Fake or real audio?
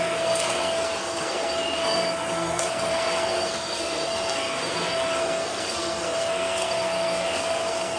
fake